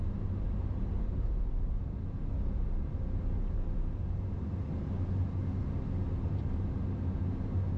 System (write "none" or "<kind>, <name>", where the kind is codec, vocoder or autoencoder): none